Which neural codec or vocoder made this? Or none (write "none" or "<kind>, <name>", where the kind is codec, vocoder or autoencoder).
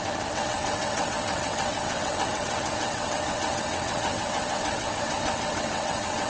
vocoder, WaveNeXt